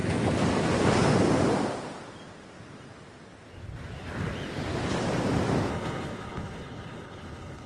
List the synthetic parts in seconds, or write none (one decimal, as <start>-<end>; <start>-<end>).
5.7-7.7